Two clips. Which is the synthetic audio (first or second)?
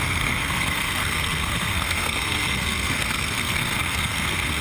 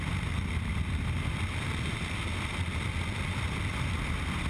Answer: first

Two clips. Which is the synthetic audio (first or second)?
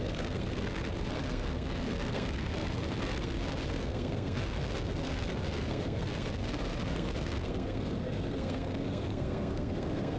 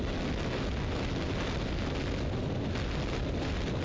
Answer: first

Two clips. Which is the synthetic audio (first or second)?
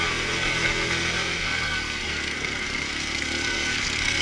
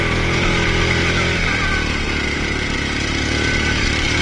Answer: first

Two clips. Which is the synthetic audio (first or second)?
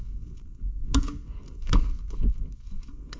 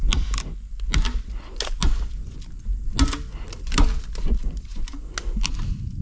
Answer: first